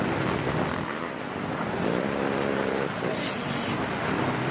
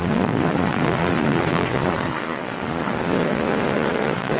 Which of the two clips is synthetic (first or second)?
second